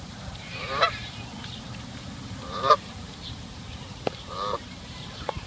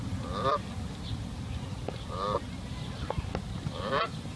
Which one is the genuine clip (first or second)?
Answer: second